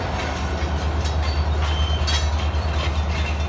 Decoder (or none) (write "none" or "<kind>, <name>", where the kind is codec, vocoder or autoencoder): none